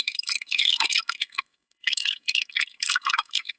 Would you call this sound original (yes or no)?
no